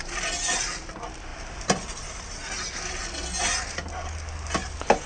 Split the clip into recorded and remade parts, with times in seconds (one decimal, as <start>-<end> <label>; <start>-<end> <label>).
0.0-5.1 recorded